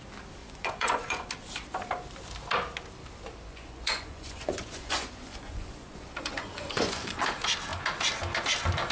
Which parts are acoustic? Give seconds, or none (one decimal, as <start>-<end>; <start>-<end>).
0.0-0.4; 1.2-3.5; 7.2-8.9